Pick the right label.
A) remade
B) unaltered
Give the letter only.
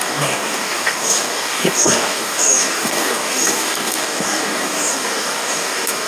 A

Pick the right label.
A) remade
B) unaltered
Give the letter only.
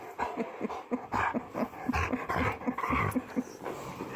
B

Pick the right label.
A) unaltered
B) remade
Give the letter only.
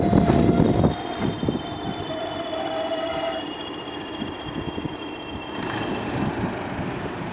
A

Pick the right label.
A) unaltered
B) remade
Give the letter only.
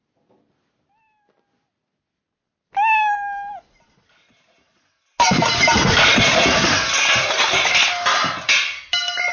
A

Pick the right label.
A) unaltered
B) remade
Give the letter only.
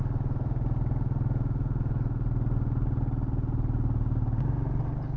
A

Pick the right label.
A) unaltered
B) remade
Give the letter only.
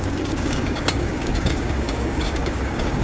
B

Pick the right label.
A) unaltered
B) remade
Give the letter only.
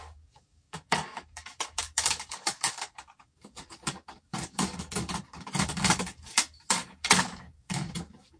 B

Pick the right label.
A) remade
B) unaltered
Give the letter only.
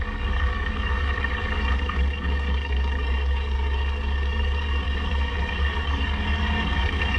A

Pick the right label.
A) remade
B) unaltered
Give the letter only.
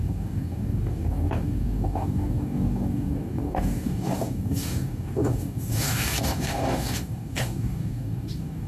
A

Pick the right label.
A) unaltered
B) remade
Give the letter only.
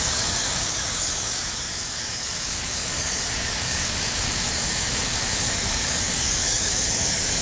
B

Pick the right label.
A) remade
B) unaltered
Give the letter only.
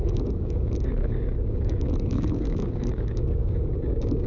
A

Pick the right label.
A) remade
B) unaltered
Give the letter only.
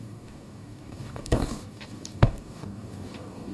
A